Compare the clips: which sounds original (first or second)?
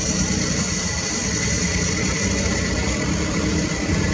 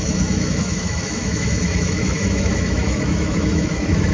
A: first